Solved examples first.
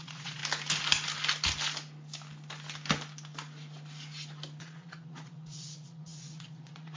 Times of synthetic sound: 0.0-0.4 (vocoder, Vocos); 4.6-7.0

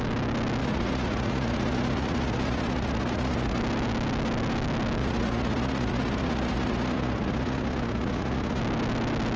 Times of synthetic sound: 0.6-3.6 (vocoder, Vocos); 5.0-8.6

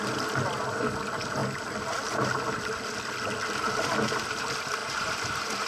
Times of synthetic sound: 4.8-5.7 (vocoder, BigVGAN v2)

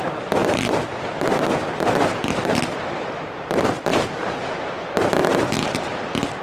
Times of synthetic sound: 0.4-4.2 (vocoder, BigVGAN v2)